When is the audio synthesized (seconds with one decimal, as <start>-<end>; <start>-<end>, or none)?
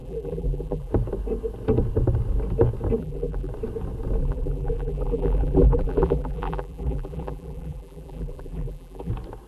0.0-0.9; 3.0-3.5; 4.2-9.1